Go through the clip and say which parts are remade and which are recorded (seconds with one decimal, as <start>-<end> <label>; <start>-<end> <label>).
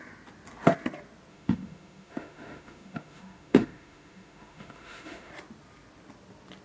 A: 0.0-1.3 recorded; 1.3-5.3 remade; 5.3-6.6 recorded